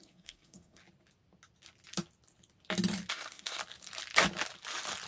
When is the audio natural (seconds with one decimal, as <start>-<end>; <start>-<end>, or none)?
0.8-3.1; 3.6-5.1